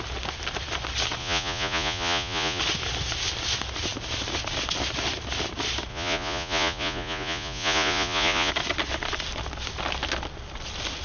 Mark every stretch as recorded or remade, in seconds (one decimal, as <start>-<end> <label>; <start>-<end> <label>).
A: 0.0-1.2 recorded; 1.2-2.6 remade; 2.6-5.9 recorded; 5.9-8.5 remade; 8.5-11.0 recorded